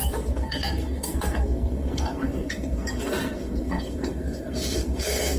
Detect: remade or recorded remade